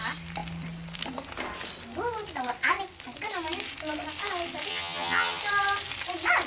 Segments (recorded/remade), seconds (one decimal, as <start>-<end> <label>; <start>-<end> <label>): 0.0-4.7 recorded; 4.7-5.4 remade; 5.4-6.5 recorded